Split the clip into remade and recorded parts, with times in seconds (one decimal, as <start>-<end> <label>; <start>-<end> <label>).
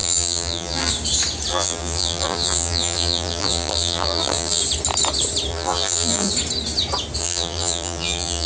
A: 0.0-0.9 remade; 0.9-1.5 recorded; 1.5-4.6 remade; 4.6-5.5 recorded; 5.5-6.3 remade; 6.3-7.2 recorded; 7.2-8.5 remade